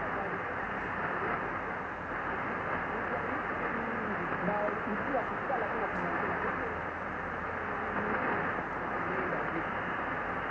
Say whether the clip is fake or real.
real